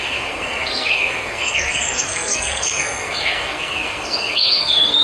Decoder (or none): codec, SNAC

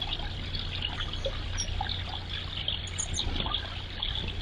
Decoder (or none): none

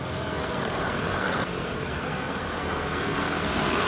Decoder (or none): codec, SNAC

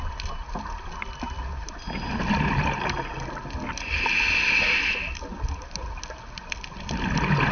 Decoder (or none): none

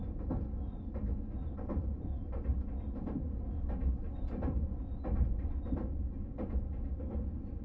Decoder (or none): none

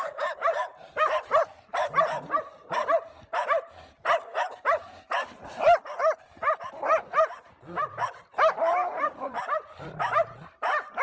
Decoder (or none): vocoder, BigVGAN v2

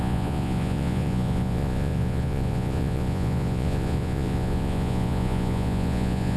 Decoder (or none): vocoder, Vocos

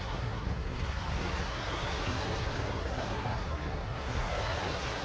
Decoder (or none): codec, SNAC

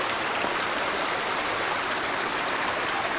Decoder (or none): vocoder, BigVGAN v2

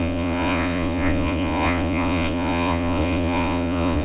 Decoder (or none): vocoder, Vocos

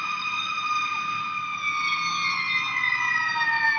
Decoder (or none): none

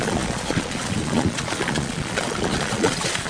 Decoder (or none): vocoder, Vocos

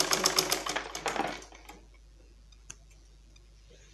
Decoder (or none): none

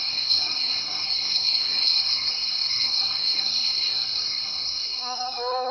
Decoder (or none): codec, SNAC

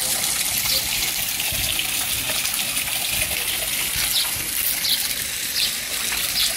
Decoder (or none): none